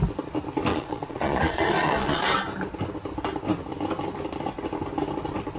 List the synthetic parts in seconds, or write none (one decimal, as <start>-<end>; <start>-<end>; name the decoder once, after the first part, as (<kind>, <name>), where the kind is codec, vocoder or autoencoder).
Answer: 0.7-2.2 (vocoder, Vocos)